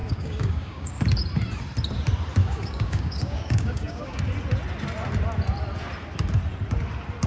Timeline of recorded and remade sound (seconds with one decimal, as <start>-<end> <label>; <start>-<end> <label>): 0.0-1.0 remade; 1.0-2.4 recorded; 2.4-4.2 remade; 4.2-7.3 recorded